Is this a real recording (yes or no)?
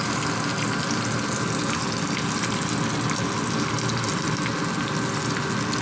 yes